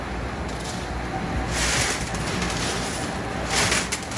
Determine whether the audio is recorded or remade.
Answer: recorded